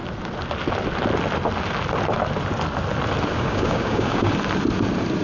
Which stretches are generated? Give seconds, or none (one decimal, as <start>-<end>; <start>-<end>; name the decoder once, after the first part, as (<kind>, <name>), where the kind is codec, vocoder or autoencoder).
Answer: 3.3-4.3 (codec, DAC)